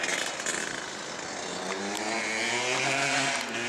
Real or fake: real